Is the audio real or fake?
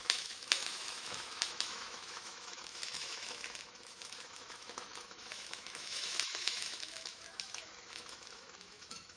fake